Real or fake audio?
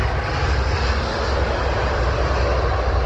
real